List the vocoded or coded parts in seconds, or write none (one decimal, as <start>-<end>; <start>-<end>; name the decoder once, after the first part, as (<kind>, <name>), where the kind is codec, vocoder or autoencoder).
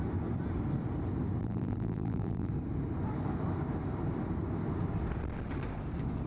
1.4-2.5 (vocoder, BigVGAN v2)